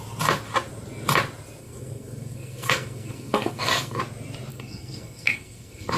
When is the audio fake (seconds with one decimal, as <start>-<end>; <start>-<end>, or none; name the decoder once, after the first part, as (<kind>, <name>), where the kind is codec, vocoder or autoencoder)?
1.6-4.0 (codec, SNAC); 4.5-6.0